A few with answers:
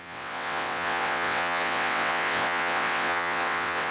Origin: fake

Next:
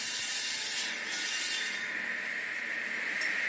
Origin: real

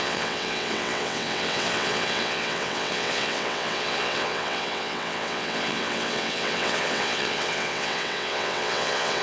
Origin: fake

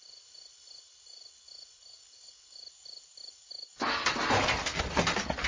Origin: real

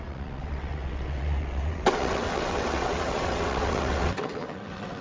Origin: fake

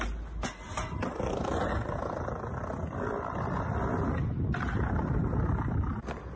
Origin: real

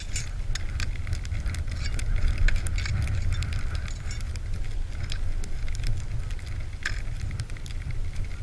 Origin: real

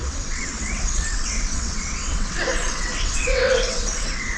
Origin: fake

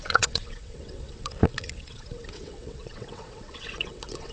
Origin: fake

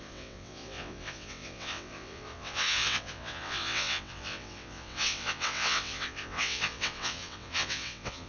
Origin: fake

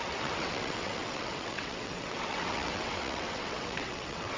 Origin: fake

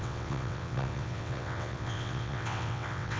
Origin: fake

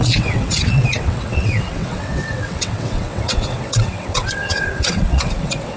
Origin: fake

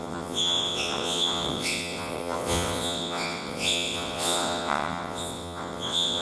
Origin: fake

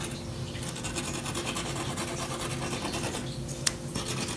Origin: real